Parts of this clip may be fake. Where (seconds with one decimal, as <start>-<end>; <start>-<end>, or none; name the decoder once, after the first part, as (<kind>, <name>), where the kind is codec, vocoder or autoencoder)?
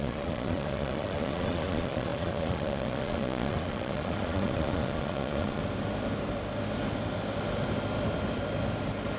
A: 0.0-5.6 (vocoder, Vocos)